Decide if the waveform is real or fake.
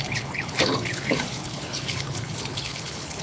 fake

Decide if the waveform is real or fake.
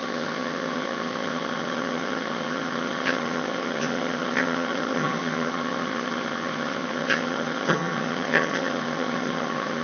fake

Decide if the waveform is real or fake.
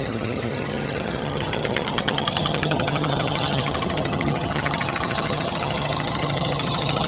fake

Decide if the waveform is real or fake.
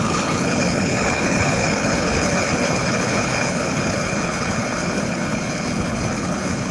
fake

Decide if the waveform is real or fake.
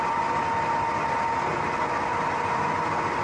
fake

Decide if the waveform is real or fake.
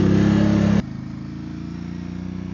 real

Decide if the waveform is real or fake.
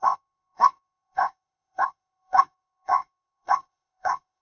fake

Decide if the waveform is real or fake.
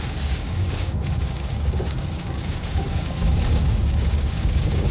fake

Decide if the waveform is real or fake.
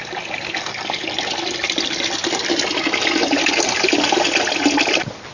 real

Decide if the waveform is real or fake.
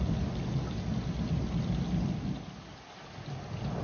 real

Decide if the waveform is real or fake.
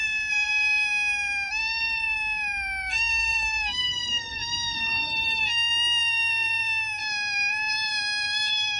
fake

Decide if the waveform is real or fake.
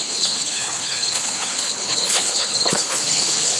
fake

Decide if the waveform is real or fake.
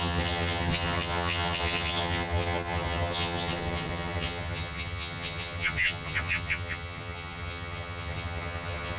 fake